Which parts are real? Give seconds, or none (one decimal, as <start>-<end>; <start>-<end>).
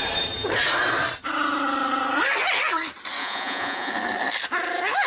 0.0-3.2; 3.9-5.1